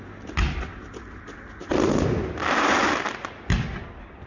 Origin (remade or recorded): recorded